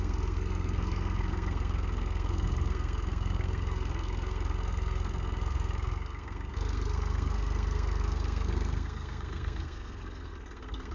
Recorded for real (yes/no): no